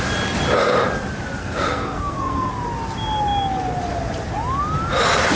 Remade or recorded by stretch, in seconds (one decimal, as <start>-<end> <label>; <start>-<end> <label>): 0.0-1.4 recorded; 1.4-2.5 remade; 2.5-5.4 recorded